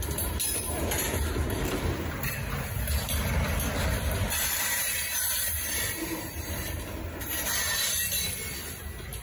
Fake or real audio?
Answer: fake